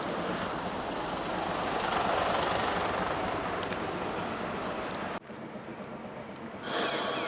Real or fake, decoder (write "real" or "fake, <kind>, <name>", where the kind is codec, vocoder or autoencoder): real